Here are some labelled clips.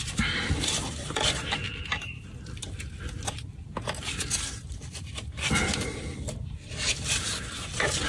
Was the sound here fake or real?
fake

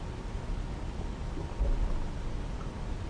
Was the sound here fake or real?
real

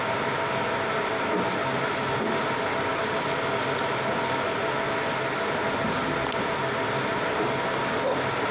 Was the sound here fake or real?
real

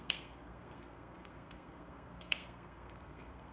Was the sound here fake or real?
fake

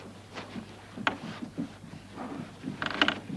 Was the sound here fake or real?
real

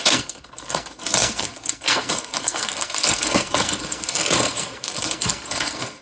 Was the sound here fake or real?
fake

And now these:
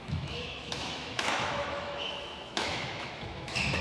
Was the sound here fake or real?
fake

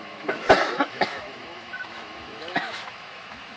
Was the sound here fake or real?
fake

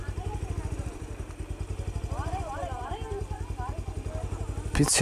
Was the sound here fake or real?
real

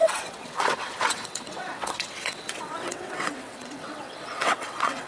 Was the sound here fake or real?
fake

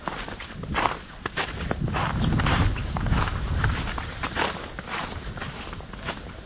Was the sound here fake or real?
fake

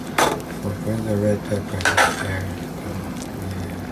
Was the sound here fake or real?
real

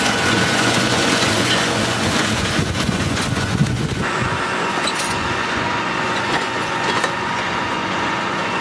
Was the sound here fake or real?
fake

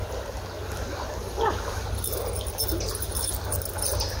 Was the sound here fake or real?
real